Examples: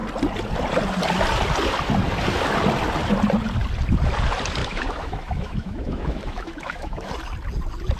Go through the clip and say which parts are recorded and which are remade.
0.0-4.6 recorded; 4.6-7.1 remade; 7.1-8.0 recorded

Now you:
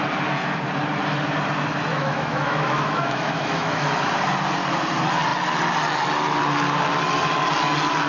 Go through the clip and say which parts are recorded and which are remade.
0.0-1.9 recorded; 1.9-4.1 remade; 4.1-8.1 recorded

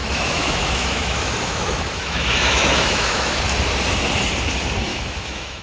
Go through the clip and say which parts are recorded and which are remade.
0.0-3.4 remade; 3.4-4.9 recorded; 4.9-5.6 remade